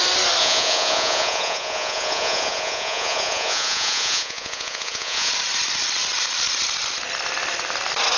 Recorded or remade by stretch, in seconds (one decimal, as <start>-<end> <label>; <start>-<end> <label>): 0.0-0.4 recorded; 0.4-5.3 remade; 5.3-8.2 recorded